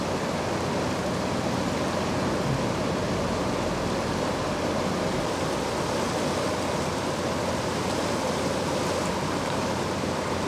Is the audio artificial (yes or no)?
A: no